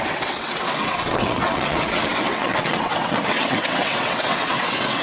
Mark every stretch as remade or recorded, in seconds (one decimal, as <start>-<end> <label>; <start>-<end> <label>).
0.0-5.0 remade